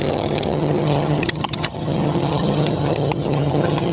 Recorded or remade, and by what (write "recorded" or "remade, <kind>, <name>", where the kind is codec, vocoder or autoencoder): remade, vocoder, HiFi-GAN